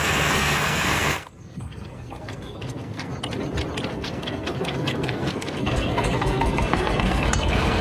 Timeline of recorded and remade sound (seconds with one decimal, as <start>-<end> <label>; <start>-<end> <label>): 0.0-3.1 remade; 3.1-3.9 recorded; 3.9-7.8 remade

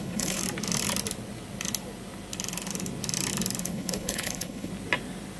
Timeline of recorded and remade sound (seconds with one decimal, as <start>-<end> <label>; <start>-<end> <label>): 0.0-0.4 remade; 0.4-3.6 recorded; 3.6-4.7 remade; 4.7-5.4 recorded

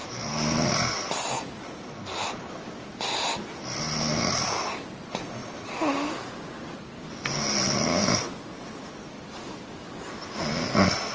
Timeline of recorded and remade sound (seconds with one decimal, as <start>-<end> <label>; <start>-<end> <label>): 0.0-1.6 remade; 1.6-5.4 recorded; 5.4-6.3 remade; 6.3-11.1 recorded

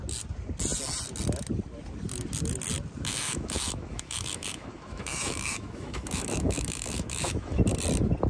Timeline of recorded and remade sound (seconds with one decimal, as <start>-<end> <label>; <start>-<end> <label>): 0.0-3.1 recorded; 3.1-7.6 remade; 7.6-8.3 recorded

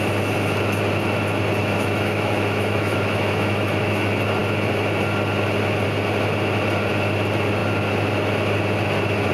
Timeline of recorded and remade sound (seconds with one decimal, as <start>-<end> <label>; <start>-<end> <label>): 0.0-1.6 recorded; 1.6-3.9 remade; 3.9-9.3 recorded

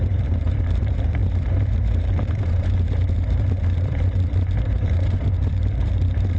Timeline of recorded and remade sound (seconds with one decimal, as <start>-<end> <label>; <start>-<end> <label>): 0.0-6.4 remade